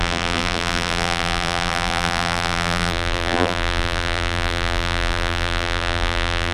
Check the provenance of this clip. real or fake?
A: fake